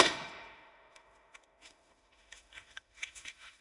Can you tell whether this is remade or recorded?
remade